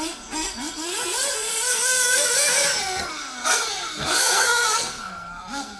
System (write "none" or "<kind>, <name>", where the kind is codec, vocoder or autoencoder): codec, SNAC